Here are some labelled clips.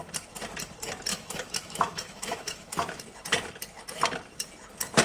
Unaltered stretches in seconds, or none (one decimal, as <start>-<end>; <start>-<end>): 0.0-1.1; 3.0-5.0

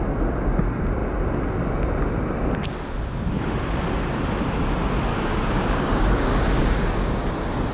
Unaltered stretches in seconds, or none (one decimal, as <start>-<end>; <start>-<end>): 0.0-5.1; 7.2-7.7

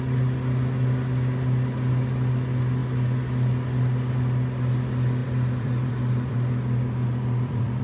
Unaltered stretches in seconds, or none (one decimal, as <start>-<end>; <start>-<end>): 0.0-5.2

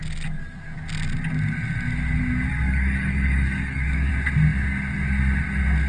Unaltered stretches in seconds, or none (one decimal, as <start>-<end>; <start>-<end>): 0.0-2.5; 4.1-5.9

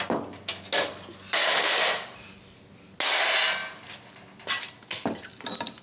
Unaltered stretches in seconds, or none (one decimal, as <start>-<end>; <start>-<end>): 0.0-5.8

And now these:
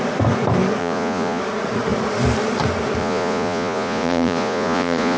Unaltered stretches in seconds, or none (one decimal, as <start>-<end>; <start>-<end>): 0.0-0.8; 1.4-3.0

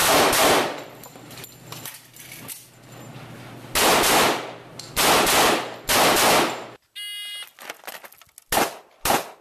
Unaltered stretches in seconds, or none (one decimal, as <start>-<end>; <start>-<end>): 2.4-9.4